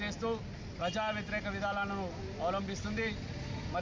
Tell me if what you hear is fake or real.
real